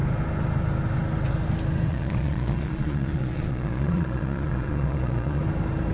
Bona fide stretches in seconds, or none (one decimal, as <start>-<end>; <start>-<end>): 0.0-1.9; 5.4-5.9